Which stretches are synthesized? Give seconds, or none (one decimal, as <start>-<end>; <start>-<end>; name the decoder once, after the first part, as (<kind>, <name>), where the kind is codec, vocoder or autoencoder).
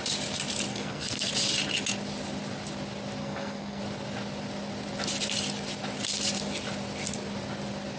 0.7-1.3 (codec, SNAC); 3.2-3.8